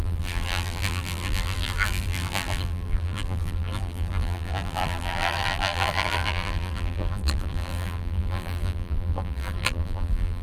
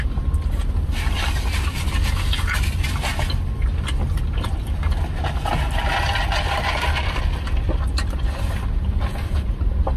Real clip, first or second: second